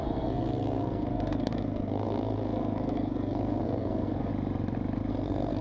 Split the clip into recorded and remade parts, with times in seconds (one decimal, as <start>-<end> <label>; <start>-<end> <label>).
0.0-4.3 remade; 4.3-5.1 recorded; 5.1-5.6 remade